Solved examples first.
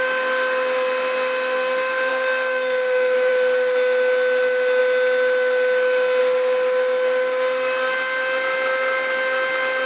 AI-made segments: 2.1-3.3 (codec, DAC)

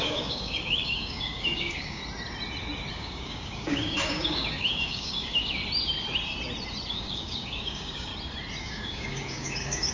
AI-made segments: 0.0-2.0 (codec, DAC); 2.9-5.6; 6.9-8.1; 8.6-9.9